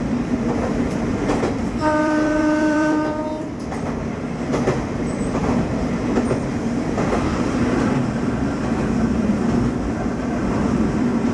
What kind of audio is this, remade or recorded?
remade